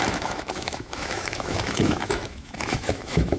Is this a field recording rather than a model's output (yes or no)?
no